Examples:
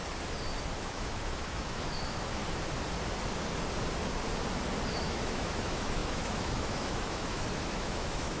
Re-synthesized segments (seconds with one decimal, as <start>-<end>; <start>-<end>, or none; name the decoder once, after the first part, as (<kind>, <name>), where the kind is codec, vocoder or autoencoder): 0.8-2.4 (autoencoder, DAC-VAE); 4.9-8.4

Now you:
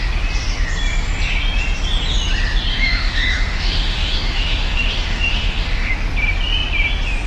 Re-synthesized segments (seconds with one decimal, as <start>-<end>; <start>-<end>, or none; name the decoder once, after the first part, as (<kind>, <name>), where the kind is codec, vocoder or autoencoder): 2.7-5.9 (autoencoder, DAC-VAE)

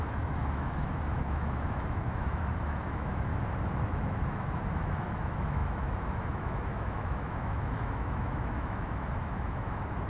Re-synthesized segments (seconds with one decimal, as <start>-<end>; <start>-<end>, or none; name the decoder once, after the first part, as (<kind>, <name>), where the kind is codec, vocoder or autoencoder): 0.0-3.3 (autoencoder, DAC-VAE); 3.8-10.1

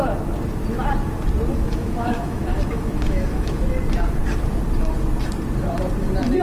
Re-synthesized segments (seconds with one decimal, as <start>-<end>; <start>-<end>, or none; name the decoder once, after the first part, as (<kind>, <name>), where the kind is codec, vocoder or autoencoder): 1.5-3.6 (autoencoder, DAC-VAE)

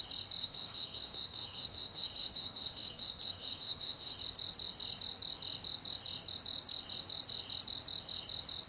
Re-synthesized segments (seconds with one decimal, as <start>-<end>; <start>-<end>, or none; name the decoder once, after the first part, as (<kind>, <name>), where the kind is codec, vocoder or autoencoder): 0.4-4.2 (autoencoder, DAC-VAE)